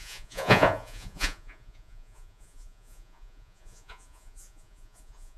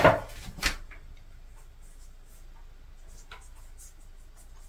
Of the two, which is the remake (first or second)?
first